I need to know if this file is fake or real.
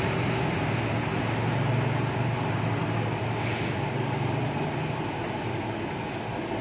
real